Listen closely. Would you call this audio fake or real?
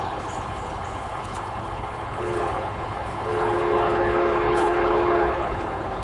fake